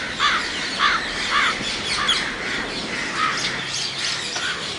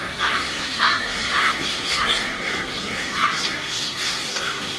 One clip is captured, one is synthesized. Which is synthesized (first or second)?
second